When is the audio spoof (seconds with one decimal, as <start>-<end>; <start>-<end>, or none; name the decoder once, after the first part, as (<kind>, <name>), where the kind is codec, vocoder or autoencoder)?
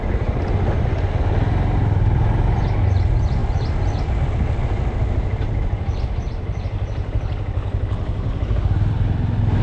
none